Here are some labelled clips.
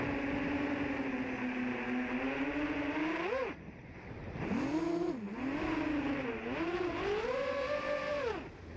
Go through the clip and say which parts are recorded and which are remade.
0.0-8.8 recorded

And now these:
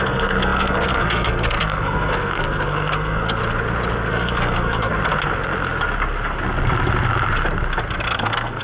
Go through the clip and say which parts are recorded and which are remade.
0.0-3.4 remade; 3.4-4.1 recorded; 4.1-4.9 remade; 4.9-8.0 recorded; 8.0-8.6 remade